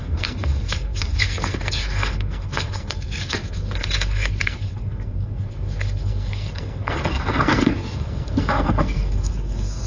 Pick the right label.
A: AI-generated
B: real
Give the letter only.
A